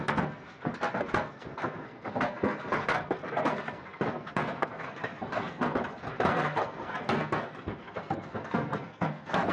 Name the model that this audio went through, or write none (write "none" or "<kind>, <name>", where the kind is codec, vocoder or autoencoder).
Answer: codec, SNAC